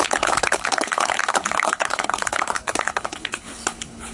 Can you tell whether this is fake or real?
fake